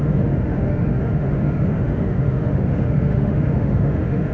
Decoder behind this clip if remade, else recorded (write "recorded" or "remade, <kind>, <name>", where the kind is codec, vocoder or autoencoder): remade, autoencoder, DAC-VAE